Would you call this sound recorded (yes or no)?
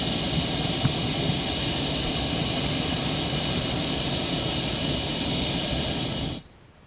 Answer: yes